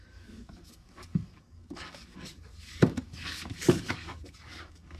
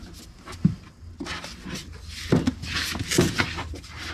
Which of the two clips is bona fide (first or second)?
second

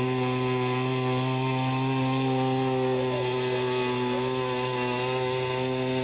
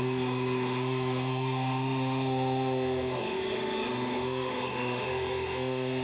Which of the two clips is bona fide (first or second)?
first